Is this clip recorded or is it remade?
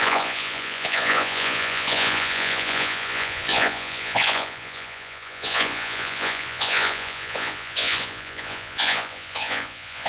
remade